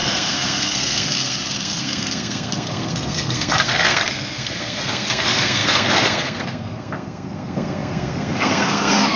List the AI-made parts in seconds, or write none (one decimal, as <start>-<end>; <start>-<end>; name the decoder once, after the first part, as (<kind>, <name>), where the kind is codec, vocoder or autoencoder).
0.0-9.2 (codec, SNAC)